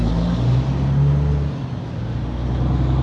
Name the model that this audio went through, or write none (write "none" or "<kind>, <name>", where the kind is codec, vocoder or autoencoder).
none